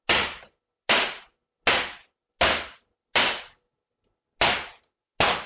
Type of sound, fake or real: real